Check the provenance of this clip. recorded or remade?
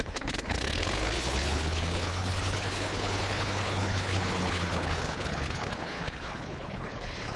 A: remade